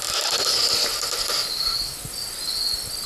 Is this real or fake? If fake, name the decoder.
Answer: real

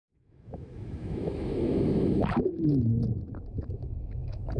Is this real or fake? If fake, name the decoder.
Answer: fake, autoencoder, DAC-VAE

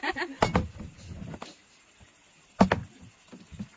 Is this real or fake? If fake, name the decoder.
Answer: real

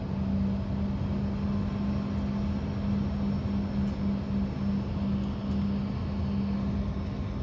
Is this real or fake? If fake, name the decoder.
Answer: real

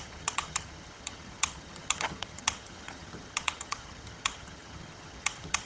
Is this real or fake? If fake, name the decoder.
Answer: fake, vocoder, HiFi-GAN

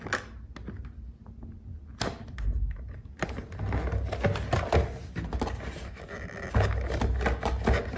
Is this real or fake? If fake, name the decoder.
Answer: real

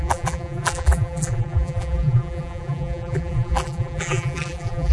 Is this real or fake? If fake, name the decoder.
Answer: fake, vocoder, BigVGAN v2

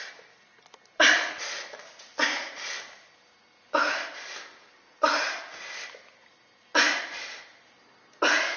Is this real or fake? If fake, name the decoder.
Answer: real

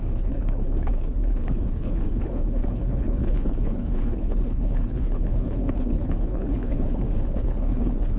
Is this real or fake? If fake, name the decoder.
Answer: fake, codec, HILCodec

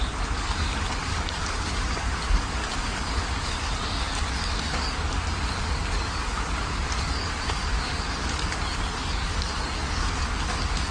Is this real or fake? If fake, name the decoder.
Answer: fake, codec, DAC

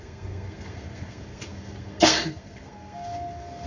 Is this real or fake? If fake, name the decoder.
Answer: fake, codec, SNAC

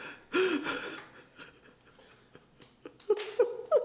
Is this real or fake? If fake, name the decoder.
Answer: real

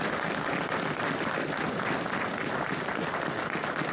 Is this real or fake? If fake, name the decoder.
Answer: real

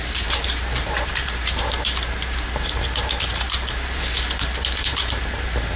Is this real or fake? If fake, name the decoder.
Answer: fake, vocoder, BigVGAN v2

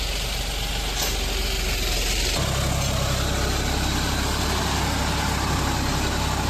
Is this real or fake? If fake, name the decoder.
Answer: real